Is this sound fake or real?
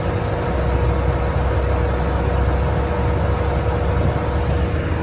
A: real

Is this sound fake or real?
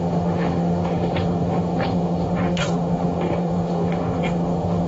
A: fake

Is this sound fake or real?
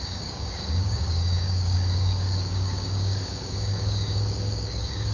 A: fake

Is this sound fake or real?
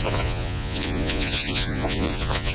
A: fake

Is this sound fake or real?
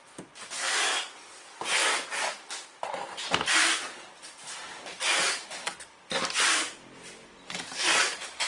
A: real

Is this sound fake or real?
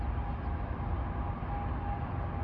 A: real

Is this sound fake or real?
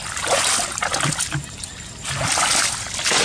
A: real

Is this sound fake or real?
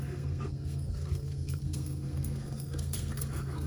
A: fake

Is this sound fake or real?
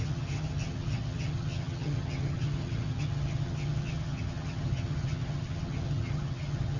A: fake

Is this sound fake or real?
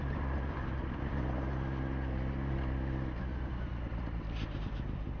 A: real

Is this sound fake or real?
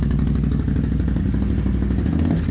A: real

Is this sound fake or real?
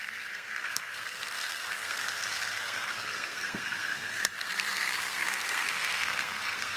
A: fake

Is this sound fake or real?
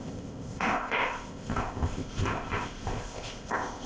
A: fake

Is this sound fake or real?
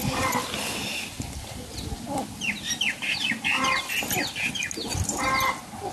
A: real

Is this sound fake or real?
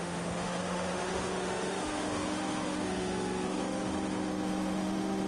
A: fake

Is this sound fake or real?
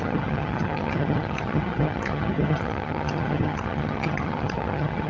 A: fake